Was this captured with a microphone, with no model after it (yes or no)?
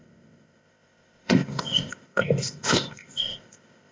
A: no